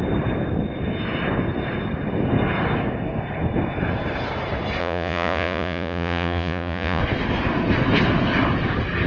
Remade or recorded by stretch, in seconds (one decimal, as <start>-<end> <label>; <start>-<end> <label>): 0.0-4.8 recorded; 4.8-7.0 remade; 7.0-9.1 recorded